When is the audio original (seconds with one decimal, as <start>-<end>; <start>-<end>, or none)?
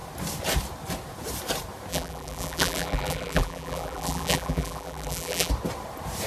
0.0-1.9; 5.5-6.3